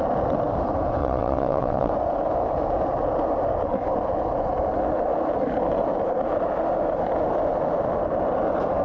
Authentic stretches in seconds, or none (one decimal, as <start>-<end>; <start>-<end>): 0.0-1.0; 1.9-8.8